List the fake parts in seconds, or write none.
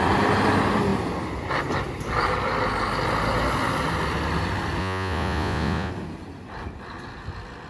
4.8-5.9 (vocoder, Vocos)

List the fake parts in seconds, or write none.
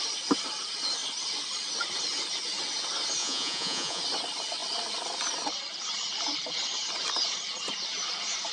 3.2-4.0 (vocoder, Vocos)